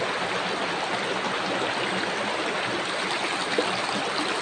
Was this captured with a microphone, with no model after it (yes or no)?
yes